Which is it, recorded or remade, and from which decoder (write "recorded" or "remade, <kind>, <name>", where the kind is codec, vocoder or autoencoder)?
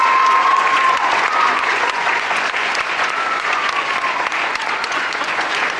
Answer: remade, vocoder, Vocos